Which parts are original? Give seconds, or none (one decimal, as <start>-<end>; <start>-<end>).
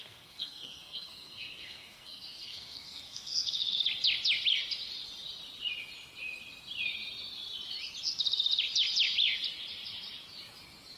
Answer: 3.8-11.0